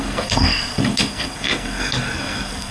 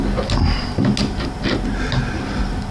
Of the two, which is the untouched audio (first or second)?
second